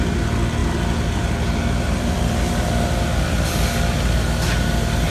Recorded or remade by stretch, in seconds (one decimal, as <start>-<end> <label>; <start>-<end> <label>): 0.0-5.1 recorded